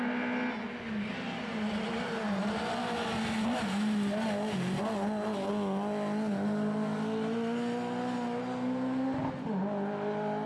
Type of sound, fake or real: real